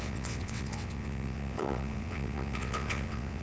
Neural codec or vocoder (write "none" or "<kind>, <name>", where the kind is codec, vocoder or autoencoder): vocoder, WaveNeXt